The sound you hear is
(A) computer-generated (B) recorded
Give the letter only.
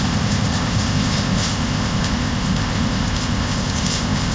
A